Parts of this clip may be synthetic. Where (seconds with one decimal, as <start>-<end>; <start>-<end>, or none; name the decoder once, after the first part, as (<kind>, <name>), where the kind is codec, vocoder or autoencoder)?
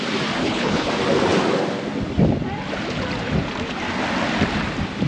0.4-0.9 (codec, HILCodec)